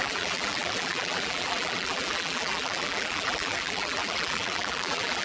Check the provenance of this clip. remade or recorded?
remade